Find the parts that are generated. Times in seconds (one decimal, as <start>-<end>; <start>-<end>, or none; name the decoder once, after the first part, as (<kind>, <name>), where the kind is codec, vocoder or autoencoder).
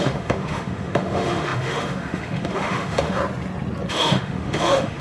0.0-3.2 (autoencoder, DAC-VAE); 3.9-5.0